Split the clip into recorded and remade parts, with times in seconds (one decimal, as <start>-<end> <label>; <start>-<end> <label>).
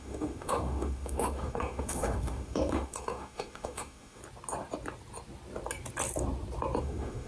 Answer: 0.0-4.2 remade; 4.2-6.8 recorded; 6.8-7.3 remade